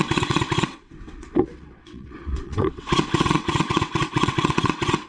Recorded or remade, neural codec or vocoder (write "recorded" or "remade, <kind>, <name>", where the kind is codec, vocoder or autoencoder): remade, vocoder, WaveNeXt